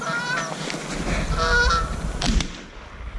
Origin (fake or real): real